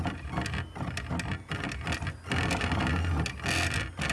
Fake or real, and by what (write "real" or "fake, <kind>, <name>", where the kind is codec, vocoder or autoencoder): real